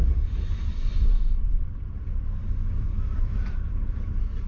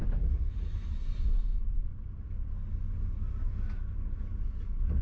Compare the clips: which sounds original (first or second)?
second